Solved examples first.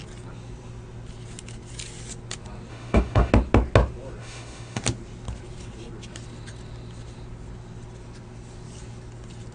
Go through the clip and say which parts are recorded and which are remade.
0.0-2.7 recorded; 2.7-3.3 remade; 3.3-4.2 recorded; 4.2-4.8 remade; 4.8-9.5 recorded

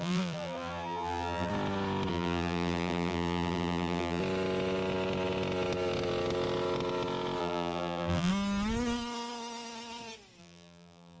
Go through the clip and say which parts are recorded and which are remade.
0.0-1.5 remade; 1.5-2.1 recorded; 2.1-4.2 remade; 4.2-7.4 recorded; 7.4-8.3 remade; 8.3-10.4 recorded; 10.4-11.2 remade